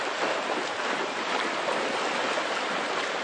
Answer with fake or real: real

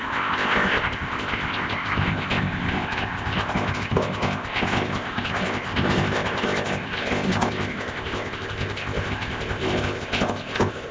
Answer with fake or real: fake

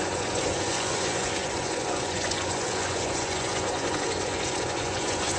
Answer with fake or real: fake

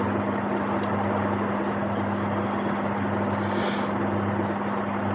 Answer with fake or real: real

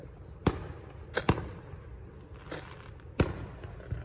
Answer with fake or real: real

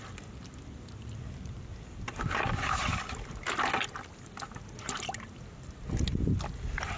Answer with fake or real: real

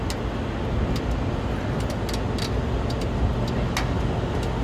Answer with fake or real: real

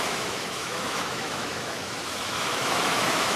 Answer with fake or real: fake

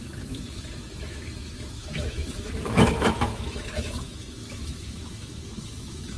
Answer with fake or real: fake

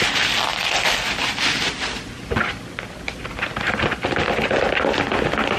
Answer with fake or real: real